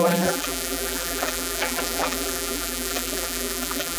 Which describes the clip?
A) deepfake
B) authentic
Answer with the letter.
A